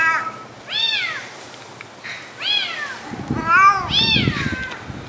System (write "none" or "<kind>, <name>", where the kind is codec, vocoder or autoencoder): none